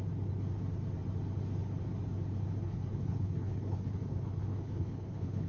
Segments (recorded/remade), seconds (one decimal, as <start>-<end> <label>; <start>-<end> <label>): 0.0-2.6 recorded; 2.6-5.5 remade